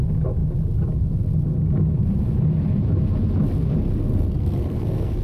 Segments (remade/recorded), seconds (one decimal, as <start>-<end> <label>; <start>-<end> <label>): 0.0-4.1 recorded; 4.1-5.2 remade